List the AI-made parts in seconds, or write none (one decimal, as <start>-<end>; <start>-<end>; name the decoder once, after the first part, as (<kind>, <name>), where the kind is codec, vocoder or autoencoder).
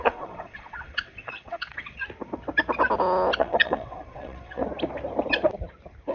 0.0-2.0 (vocoder, WaveNeXt); 3.4-4.6